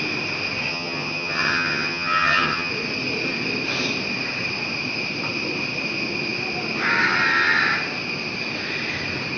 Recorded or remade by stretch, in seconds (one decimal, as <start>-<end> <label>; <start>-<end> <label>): 0.0-0.7 recorded; 0.7-2.7 remade; 2.7-9.4 recorded